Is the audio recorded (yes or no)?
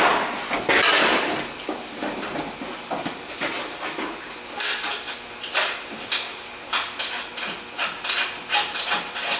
yes